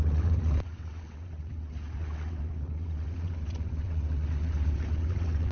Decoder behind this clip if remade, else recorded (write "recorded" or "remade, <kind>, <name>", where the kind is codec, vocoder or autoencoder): remade, vocoder, WaveNeXt